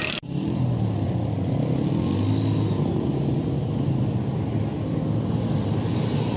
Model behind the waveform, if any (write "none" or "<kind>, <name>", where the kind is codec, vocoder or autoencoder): none